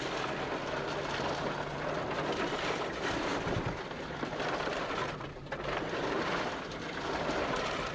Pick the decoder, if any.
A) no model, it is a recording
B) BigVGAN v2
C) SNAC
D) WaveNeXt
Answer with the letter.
A